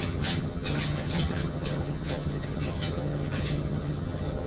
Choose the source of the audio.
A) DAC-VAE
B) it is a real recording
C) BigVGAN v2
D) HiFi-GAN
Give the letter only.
D